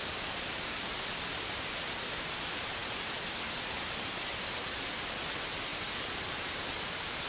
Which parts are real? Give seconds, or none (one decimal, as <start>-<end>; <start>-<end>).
0.0-5.7; 6.6-7.3